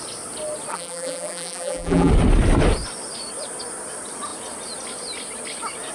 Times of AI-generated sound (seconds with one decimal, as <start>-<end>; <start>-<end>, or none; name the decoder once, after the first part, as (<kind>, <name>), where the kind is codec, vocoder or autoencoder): 0.7-2.1 (vocoder, BigVGAN v2)